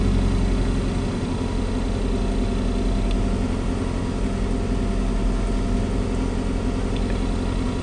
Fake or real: real